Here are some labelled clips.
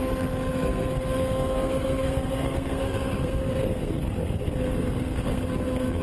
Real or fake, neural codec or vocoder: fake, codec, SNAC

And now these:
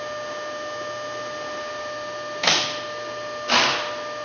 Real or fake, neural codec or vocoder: real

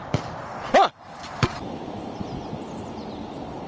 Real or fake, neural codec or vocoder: fake, vocoder, BigVGAN v2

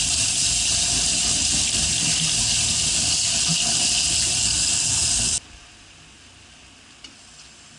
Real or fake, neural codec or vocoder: real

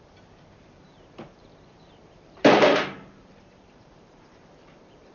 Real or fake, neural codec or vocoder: fake, vocoder, BigVGAN v2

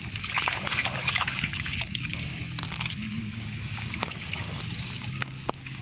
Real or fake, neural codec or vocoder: fake, codec, DAC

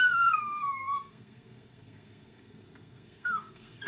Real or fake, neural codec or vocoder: fake, codec, SNAC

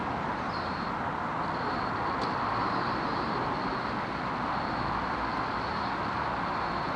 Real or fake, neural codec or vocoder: real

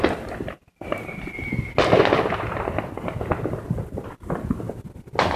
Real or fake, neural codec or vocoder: real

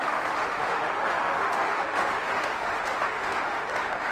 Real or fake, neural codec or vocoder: fake, autoencoder, DAC-VAE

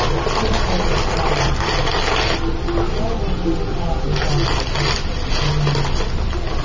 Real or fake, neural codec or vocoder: real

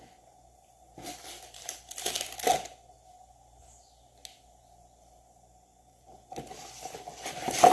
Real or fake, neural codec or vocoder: real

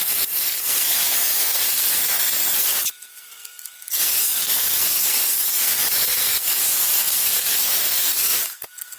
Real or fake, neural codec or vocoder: fake, codec, SNAC